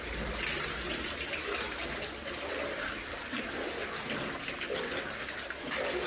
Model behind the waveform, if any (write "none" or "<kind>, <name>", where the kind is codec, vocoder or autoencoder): none